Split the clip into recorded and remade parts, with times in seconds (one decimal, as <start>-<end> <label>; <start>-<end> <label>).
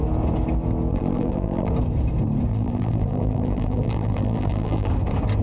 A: 0.0-0.9 recorded; 0.9-1.7 remade; 1.7-2.5 recorded; 2.5-4.9 remade; 4.9-5.4 recorded